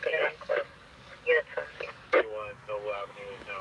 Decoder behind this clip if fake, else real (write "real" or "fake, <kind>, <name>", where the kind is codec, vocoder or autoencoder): fake, codec, DAC